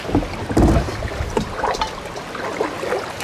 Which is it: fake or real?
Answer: real